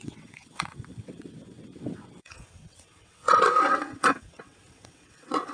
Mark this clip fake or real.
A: fake